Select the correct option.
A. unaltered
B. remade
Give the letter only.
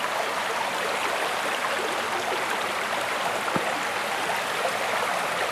A